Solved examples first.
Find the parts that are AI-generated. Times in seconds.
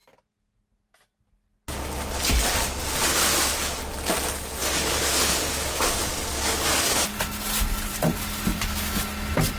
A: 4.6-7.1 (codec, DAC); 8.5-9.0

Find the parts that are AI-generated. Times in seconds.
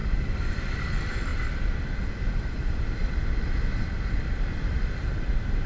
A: 0.0-1.3 (vocoder, BigVGAN v2); 2.0-3.0; 4.2-5.7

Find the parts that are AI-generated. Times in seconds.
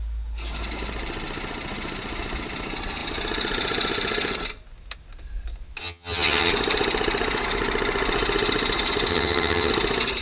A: 5.8-6.5 (vocoder, HiFi-GAN); 9.1-9.7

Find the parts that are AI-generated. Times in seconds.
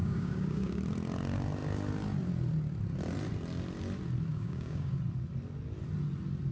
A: 0.0-0.8 (codec, DAC); 4.3-5.0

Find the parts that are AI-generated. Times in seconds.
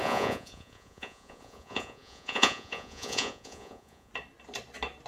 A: 0.0-4.1 (vocoder, Vocos)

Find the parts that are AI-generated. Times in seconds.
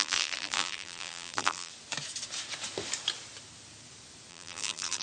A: 0.0-1.7 (vocoder, BigVGAN v2); 4.3-5.0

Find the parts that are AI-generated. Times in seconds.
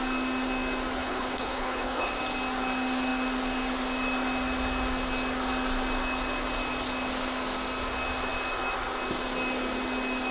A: 1.0-2.1 (codec, HILCodec)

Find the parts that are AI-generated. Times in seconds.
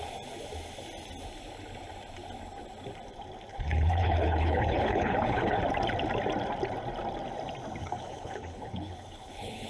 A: 3.5-5.6 (codec, HILCodec); 7.8-9.7